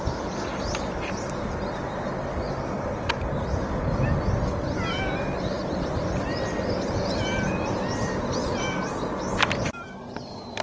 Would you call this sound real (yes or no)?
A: yes